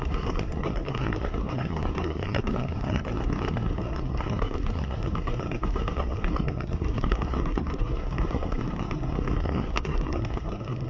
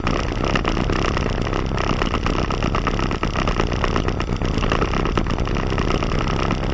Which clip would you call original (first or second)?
second